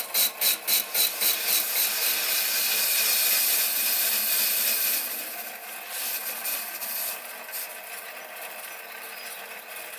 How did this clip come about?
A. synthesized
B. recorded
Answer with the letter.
B